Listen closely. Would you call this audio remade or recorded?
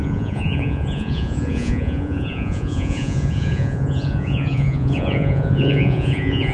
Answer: remade